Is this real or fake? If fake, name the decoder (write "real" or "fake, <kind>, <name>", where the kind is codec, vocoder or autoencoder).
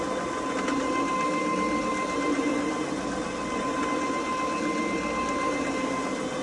real